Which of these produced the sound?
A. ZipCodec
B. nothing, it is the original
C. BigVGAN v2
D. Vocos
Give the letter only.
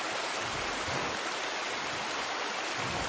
B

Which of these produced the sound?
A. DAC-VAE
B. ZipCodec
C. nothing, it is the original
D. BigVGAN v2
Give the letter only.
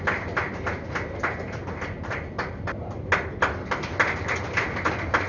C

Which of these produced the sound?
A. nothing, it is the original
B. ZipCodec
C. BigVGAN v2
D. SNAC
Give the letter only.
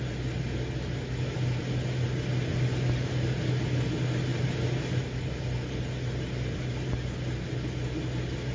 A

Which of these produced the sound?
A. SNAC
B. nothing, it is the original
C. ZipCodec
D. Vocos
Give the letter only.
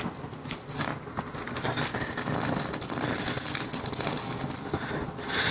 B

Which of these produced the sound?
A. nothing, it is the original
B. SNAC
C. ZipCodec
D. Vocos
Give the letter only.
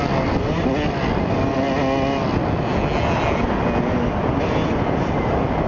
A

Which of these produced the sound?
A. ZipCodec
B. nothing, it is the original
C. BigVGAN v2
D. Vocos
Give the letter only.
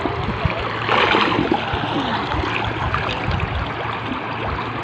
B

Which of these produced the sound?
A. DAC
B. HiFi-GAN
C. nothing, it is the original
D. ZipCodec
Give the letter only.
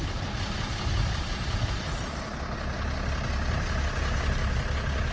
C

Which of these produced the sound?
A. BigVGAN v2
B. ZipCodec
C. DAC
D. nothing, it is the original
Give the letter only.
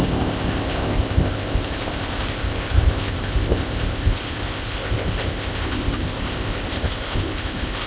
B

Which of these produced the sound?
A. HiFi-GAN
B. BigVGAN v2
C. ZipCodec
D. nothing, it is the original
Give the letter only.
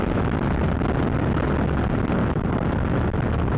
D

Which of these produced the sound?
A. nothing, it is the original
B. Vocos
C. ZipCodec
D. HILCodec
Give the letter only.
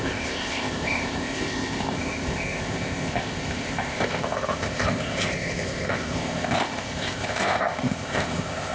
C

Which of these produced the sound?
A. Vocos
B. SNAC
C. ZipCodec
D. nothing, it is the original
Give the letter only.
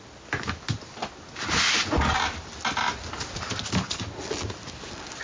D